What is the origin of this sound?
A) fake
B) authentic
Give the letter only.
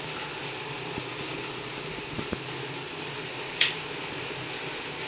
B